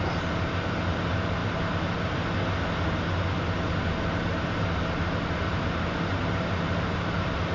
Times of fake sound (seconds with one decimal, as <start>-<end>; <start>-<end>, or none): none